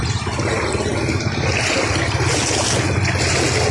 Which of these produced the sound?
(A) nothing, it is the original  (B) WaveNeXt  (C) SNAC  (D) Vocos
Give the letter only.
A